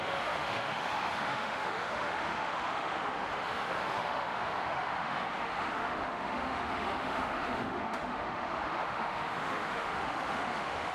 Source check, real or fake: fake